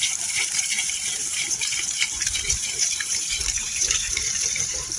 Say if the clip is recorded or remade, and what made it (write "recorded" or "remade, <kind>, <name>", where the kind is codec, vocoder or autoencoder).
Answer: remade, vocoder, BigVGAN v2